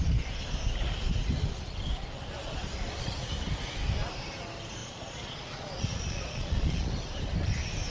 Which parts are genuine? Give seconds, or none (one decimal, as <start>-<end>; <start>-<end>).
0.0-4.8; 6.9-7.9